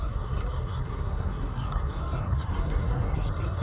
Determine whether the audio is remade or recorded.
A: remade